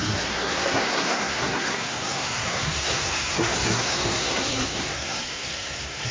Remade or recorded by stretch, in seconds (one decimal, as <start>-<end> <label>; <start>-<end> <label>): 0.0-6.1 remade